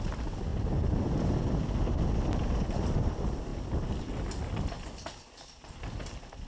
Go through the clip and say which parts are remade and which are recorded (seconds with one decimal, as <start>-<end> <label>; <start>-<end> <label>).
0.0-6.5 recorded